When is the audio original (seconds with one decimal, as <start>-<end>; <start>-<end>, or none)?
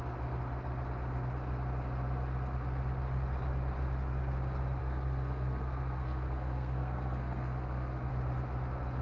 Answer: 0.0-4.8; 8.1-9.0